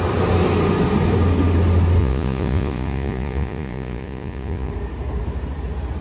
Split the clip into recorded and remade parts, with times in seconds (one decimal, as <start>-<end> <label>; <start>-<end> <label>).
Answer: 0.0-2.0 recorded; 2.0-4.7 remade; 4.7-6.0 recorded